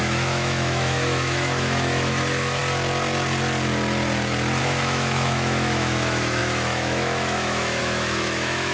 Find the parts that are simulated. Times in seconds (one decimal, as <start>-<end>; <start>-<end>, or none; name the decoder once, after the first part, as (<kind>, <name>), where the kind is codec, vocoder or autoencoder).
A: 0.0-2.6 (autoencoder, DAC-VAE); 4.6-8.7

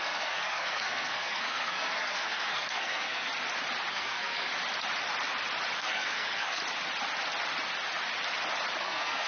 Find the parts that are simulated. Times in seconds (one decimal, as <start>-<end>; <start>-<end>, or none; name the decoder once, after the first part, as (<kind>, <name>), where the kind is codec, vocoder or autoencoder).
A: 0.0-3.3 (codec, SNAC); 3.9-4.5; 5.8-6.6; 8.8-9.3

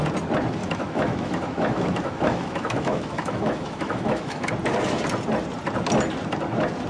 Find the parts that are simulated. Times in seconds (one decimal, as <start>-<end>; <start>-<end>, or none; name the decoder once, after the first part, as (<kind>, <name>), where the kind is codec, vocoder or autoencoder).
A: 0.6-4.5 (autoencoder, DAC-VAE)

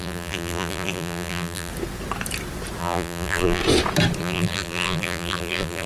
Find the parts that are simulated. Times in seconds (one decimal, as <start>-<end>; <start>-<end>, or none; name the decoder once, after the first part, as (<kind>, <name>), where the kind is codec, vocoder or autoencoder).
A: 0.0-1.7 (vocoder, BigVGAN v2); 2.8-3.6; 4.2-5.9

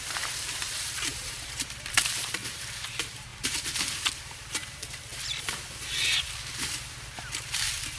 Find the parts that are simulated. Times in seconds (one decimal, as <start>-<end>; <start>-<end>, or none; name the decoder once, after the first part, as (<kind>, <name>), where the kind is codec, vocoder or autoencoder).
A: 0.0-8.0 (vocoder, BigVGAN v2)

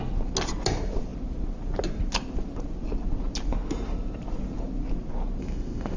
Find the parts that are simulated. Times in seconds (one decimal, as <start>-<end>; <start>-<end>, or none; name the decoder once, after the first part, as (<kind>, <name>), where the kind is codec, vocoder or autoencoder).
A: 5.4-6.0 (codec, ZipCodec)

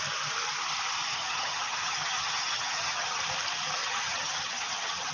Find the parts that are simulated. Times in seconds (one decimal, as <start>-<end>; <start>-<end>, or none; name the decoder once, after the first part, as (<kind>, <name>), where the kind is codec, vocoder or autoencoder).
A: 1.1-3.2 (vocoder, HiFi-GAN); 3.8-5.1

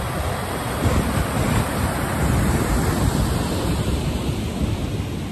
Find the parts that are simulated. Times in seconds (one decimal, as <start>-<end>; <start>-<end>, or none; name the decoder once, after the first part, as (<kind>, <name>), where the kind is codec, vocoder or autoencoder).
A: none